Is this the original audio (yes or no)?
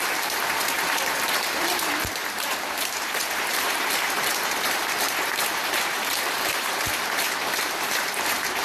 no